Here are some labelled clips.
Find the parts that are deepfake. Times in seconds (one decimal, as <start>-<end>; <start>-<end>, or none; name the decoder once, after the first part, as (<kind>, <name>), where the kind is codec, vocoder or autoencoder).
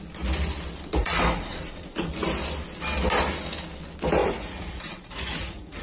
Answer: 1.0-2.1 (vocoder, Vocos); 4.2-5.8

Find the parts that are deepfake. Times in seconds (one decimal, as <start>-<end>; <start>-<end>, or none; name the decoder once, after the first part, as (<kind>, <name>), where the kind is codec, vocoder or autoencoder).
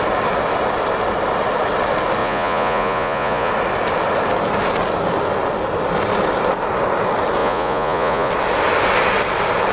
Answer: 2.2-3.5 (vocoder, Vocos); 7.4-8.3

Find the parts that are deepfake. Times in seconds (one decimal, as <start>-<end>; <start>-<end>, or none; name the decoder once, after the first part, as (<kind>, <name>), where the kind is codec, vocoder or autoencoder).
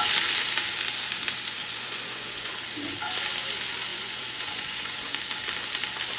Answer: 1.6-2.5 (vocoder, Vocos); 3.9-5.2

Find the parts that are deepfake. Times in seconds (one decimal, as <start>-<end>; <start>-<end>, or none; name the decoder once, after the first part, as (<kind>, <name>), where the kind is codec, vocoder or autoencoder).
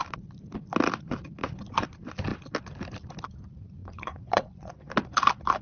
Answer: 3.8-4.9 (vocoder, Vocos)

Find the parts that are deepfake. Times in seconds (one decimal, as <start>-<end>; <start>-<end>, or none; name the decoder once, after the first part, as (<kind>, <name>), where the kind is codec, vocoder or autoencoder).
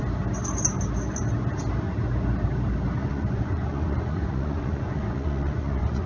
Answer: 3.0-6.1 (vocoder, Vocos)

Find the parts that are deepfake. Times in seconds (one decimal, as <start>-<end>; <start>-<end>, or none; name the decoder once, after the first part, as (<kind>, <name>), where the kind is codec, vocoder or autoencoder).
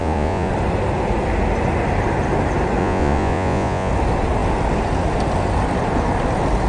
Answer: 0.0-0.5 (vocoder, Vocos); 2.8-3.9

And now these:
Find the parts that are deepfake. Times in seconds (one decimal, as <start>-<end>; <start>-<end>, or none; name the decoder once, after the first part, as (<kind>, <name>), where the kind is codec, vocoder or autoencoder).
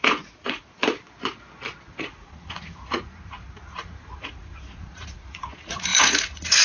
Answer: 0.0-0.8 (vocoder, Vocos); 1.9-6.6